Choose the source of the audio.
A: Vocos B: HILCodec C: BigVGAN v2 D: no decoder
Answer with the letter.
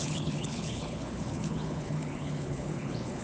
B